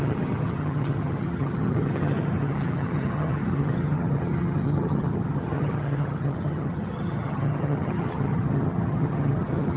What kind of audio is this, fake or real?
fake